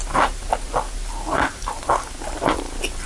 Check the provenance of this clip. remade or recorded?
recorded